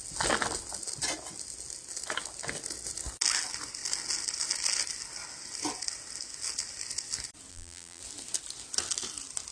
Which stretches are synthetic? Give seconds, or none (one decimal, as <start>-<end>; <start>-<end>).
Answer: 7.5-8.0